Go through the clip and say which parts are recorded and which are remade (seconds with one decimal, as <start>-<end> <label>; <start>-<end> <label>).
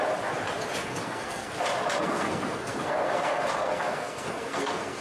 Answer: 0.0-0.8 recorded; 0.8-1.5 remade; 1.5-2.0 recorded; 2.0-5.0 remade